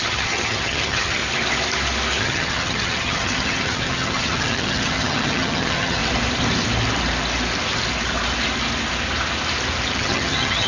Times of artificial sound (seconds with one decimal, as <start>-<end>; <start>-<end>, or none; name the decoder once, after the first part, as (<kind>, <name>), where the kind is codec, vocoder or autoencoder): 0.0-1.2 (vocoder, HiFi-GAN); 2.2-6.0; 9.9-10.7